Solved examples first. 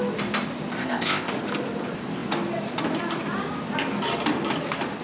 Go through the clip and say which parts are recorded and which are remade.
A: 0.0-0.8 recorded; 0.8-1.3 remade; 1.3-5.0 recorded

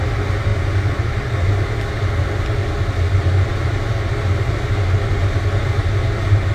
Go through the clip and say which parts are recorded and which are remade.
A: 0.0-6.5 recorded

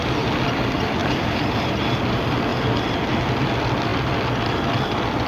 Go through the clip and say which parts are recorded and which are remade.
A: 0.0-1.0 recorded; 1.0-1.8 remade; 1.8-5.3 recorded

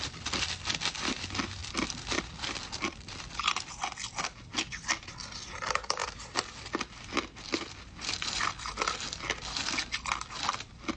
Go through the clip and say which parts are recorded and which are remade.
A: 0.0-11.0 recorded

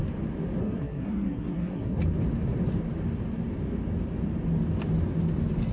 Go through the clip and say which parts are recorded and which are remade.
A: 0.0-0.6 recorded; 0.6-2.0 remade; 2.0-5.7 recorded